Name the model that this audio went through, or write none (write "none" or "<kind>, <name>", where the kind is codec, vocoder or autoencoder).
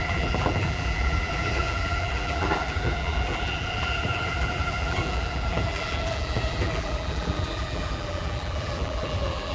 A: vocoder, BigVGAN v2